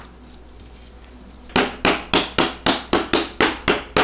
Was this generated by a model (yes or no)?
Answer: no